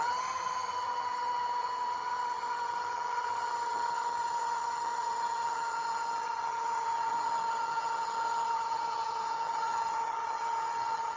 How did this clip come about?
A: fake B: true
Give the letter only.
A